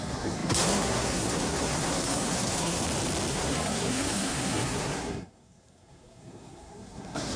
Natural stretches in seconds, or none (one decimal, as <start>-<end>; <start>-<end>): 2.8-3.3